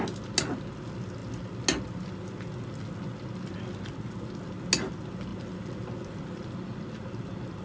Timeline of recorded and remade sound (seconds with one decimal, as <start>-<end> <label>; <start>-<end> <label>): 0.0-7.6 recorded